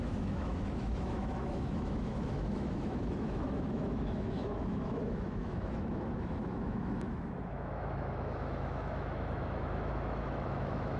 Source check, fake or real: fake